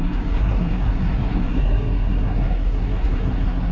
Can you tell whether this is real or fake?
fake